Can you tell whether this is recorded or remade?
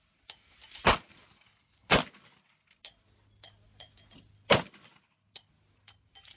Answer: recorded